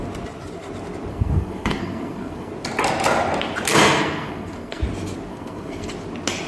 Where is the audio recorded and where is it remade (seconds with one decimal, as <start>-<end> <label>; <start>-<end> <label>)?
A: 0.0-1.1 recorded; 1.1-2.5 remade; 2.5-3.7 recorded; 3.7-4.8 remade; 4.8-5.3 recorded; 5.3-5.9 remade; 5.9-6.5 recorded